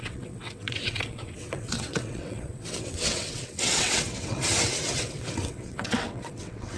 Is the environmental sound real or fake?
fake